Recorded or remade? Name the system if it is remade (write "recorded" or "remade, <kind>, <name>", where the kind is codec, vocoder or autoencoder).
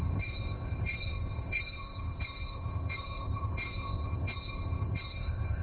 remade, codec, ZipCodec